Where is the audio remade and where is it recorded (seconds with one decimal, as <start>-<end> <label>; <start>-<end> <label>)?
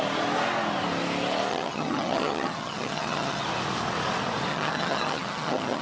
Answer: 0.0-1.5 recorded; 1.5-3.4 remade; 3.4-4.5 recorded; 4.5-5.8 remade